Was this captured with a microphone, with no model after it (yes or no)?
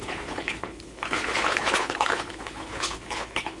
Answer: no